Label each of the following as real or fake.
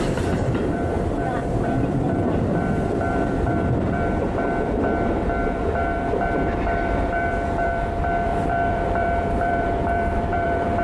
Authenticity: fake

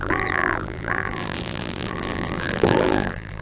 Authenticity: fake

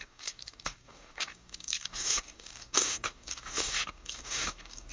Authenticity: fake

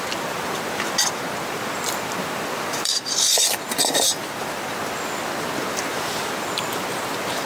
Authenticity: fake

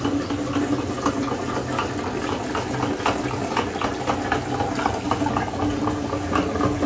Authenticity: real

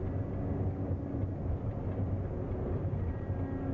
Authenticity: real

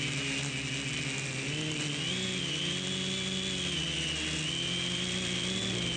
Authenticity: real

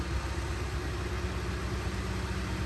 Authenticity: real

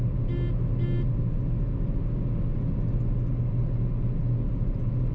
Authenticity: real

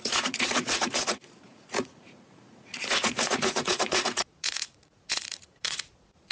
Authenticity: fake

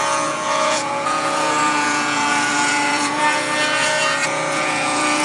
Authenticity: fake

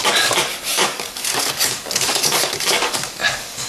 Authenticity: fake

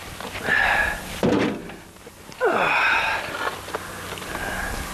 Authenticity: real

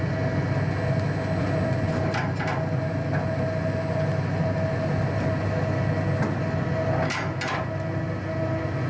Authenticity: real